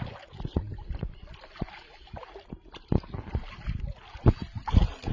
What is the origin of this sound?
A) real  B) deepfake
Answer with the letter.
A